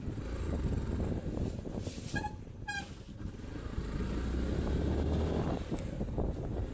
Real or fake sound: real